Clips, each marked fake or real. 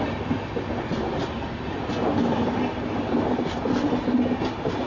real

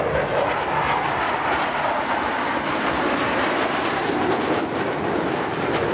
real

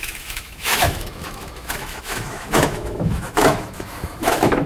fake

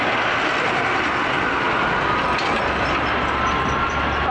real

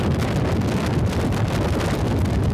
real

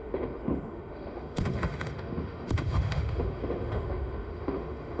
fake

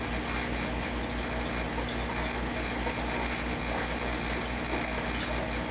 real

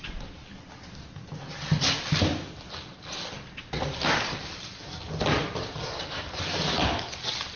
real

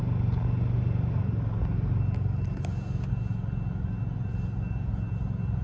real